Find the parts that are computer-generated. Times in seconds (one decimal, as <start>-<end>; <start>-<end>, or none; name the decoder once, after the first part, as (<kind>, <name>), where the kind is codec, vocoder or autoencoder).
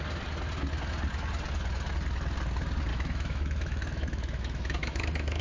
2.9-5.4 (autoencoder, DAC-VAE)